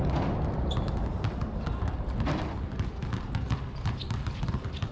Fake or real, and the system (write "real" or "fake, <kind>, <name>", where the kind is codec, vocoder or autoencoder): real